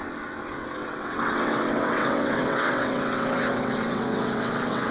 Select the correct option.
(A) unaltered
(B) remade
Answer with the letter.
B